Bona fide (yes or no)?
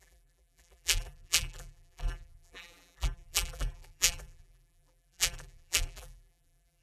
no